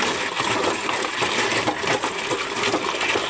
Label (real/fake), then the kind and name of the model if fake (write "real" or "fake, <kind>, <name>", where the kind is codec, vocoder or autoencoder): real